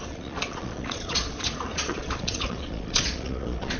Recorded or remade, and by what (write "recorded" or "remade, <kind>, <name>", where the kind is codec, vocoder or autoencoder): remade, vocoder, Vocos